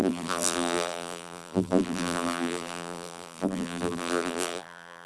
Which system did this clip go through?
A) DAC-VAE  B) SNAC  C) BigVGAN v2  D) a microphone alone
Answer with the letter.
C